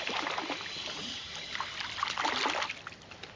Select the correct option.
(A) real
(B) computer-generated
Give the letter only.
A